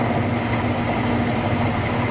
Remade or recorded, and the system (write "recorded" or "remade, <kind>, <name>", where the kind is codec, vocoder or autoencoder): recorded